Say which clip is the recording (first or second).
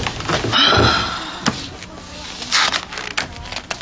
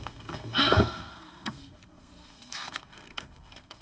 first